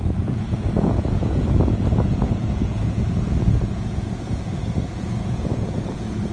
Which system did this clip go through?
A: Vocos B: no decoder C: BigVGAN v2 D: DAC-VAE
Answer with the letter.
A